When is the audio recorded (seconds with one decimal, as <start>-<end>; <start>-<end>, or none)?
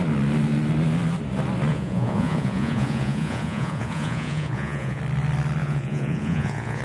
0.0-1.7; 5.0-5.6